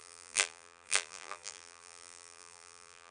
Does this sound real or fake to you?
fake